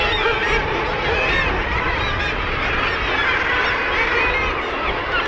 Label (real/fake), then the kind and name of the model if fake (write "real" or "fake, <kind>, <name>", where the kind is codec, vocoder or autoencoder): real